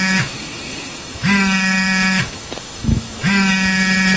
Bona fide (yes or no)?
no